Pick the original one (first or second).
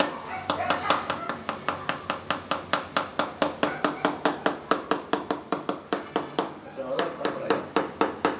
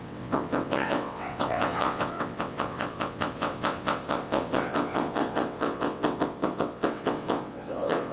first